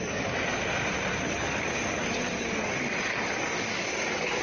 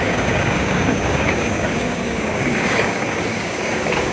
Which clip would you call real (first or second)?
first